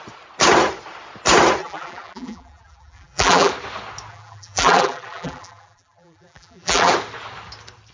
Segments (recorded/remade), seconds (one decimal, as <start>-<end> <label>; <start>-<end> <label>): 0.0-1.6 recorded; 1.6-3.5 remade; 3.5-4.1 recorded; 4.1-6.9 remade; 6.9-7.9 recorded